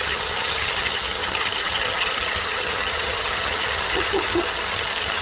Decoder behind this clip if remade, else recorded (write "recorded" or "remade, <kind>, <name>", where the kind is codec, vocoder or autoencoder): remade, vocoder, HiFi-GAN